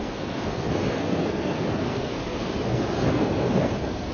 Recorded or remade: remade